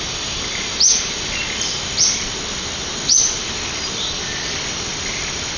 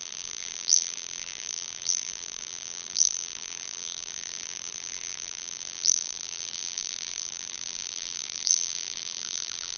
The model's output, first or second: second